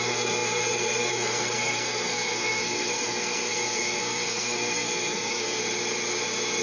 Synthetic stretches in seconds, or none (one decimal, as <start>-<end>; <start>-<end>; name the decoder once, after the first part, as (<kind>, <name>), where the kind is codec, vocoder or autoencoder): 0.0-5.6 (codec, SNAC)